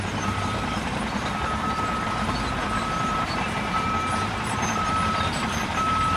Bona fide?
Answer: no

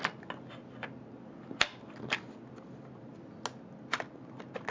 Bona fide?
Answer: yes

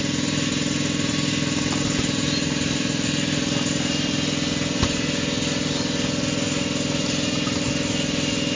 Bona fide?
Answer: yes